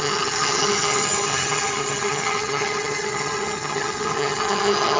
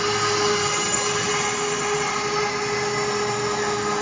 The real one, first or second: second